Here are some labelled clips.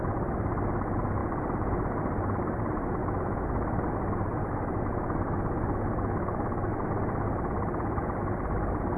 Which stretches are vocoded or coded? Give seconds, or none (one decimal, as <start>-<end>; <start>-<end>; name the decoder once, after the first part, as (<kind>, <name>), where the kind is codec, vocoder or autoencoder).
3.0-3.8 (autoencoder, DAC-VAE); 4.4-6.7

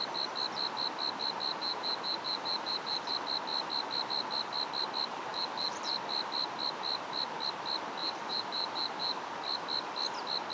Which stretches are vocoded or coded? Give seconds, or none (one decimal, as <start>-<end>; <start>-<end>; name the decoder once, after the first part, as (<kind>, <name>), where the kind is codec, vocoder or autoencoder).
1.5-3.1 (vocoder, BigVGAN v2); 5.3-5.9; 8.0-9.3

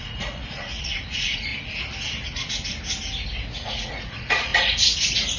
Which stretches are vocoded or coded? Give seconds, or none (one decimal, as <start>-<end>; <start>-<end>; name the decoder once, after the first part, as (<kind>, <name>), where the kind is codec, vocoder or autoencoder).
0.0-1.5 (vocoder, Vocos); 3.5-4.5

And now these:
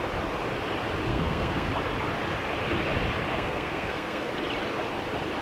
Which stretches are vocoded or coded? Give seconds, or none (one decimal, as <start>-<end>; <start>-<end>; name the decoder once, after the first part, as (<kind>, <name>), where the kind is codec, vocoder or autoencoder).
1.1-1.7 (codec, SNAC); 3.3-4.3

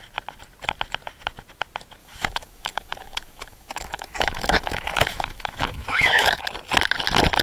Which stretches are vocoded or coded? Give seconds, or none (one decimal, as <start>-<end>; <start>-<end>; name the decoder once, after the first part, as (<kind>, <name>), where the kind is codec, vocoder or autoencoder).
2.0-6.4 (autoencoder, DAC-VAE)

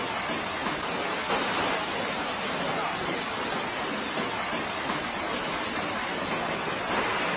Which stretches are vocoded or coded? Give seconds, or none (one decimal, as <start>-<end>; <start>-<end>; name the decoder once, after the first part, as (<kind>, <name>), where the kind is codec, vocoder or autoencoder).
none

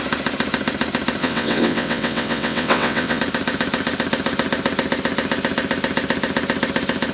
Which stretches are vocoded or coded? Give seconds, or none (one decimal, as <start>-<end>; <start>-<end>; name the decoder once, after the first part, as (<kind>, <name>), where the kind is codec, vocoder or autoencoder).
1.2-3.2 (vocoder, WaveNeXt)